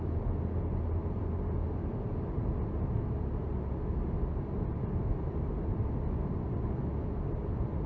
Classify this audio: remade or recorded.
recorded